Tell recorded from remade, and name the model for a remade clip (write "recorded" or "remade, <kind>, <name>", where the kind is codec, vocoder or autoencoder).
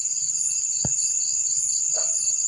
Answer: recorded